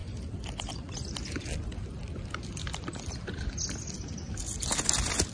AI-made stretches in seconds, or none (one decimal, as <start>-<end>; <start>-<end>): none

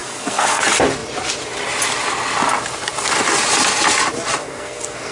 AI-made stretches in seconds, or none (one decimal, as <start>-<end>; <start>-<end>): 0.0-0.6; 4.4-5.1